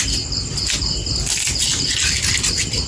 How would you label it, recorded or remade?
recorded